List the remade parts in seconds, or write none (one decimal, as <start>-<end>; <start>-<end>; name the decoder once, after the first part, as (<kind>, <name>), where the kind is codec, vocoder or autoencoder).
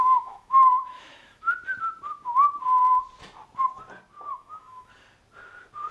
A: 0.0-1.4 (autoencoder, DAC-VAE); 4.3-4.9